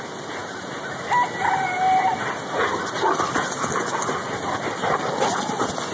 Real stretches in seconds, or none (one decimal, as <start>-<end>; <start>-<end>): 0.0-5.9